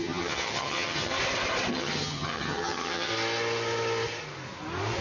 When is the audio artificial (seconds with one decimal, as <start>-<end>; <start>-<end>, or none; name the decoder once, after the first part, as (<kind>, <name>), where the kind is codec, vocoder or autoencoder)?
0.0-1.1 (vocoder, HiFi-GAN); 1.7-3.1